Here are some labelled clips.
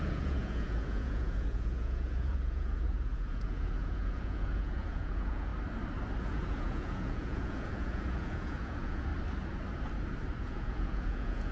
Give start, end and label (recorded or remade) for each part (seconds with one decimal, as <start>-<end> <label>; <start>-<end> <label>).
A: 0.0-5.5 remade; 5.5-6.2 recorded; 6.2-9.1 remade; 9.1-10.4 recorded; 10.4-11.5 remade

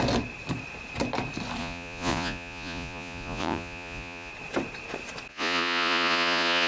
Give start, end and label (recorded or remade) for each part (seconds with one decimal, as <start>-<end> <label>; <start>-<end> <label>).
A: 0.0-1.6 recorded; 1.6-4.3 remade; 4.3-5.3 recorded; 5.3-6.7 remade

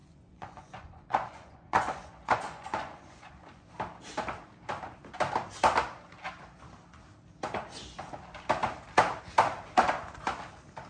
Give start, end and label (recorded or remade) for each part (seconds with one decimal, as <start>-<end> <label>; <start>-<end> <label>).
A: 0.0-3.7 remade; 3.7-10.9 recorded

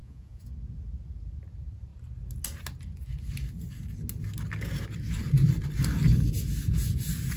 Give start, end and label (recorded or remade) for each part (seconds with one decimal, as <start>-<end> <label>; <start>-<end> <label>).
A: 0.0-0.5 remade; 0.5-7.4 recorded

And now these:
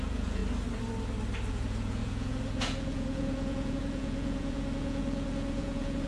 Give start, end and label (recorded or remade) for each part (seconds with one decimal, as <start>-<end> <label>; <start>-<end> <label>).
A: 0.0-0.4 remade; 0.4-1.5 recorded; 1.5-6.1 remade

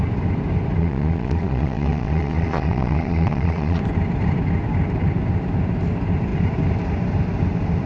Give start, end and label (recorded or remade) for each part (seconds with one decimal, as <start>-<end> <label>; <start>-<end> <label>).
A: 0.0-0.8 recorded; 0.8-3.8 remade; 3.8-7.9 recorded

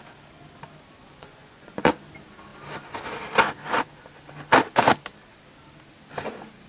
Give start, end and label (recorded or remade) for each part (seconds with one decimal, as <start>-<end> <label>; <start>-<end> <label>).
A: 0.0-1.0 recorded; 1.0-1.9 remade; 1.9-6.7 recorded